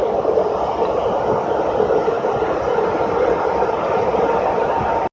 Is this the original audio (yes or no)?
yes